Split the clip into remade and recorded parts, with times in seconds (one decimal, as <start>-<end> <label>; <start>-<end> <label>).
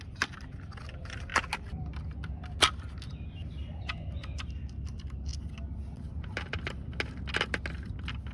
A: 0.0-8.3 recorded